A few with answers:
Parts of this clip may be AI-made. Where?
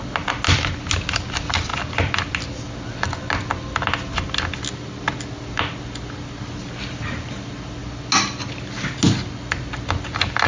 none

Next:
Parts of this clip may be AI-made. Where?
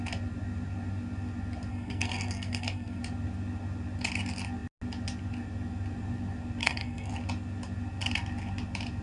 1.7-3.0 (codec, SNAC); 6.6-7.1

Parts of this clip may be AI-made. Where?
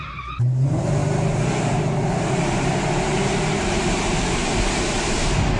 0.0-1.0 (vocoder, BigVGAN v2); 2.2-5.6